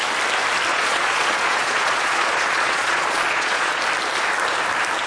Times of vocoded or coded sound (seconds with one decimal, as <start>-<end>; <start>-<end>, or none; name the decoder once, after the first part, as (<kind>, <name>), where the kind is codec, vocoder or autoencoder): 0.7-3.8 (vocoder, Vocos)